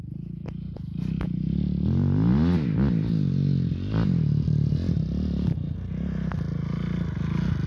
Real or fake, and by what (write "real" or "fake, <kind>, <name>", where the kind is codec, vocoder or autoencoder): real